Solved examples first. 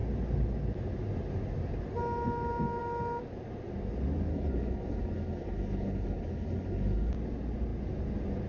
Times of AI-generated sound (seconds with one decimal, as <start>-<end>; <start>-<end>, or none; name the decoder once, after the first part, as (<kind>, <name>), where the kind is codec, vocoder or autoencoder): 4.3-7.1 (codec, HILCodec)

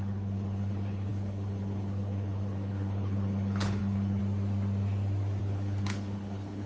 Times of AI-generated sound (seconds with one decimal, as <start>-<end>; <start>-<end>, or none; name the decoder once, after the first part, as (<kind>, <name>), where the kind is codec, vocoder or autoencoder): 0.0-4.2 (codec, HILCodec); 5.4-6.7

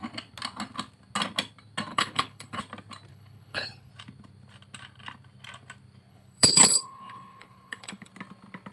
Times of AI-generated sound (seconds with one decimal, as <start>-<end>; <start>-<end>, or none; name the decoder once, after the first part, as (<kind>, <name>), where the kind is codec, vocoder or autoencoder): 1.9-2.6 (codec, HILCodec); 3.1-3.9; 6.1-8.1

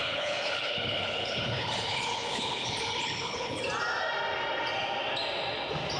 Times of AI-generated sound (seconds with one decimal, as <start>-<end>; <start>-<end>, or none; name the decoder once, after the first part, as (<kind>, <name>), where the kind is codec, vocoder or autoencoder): 0.0-3.6 (codec, HILCodec)